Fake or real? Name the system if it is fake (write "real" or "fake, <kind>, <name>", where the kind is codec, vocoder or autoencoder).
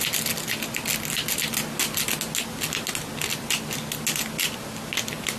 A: real